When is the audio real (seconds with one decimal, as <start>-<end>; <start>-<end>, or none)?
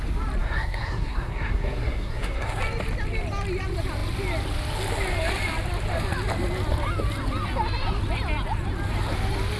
0.0-0.4; 2.6-9.6